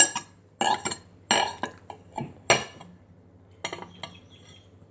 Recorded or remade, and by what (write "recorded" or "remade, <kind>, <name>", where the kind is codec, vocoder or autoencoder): recorded